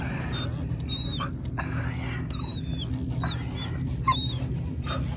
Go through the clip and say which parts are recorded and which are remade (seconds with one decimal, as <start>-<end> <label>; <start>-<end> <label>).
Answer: 0.0-5.2 recorded